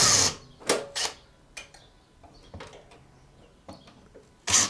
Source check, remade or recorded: recorded